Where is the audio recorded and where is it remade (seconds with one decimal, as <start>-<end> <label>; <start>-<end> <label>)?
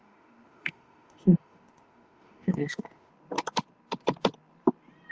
0.0-3.1 remade; 3.1-5.1 recorded